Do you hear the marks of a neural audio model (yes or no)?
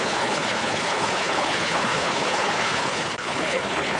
yes